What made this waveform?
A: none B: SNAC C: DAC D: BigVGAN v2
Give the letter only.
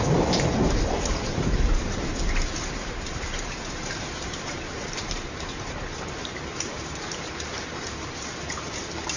D